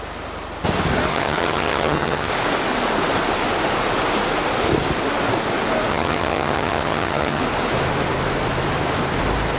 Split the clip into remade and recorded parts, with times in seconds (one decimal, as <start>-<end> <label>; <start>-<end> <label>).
0.0-1.1 recorded; 1.1-2.3 remade; 2.3-5.9 recorded; 5.9-7.4 remade; 7.4-9.6 recorded